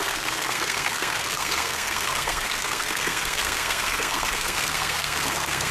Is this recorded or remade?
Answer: remade